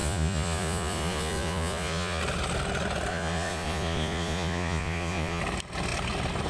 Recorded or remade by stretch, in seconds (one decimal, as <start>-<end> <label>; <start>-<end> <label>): 0.0-2.2 remade; 2.2-3.1 recorded; 3.1-5.4 remade; 5.4-6.5 recorded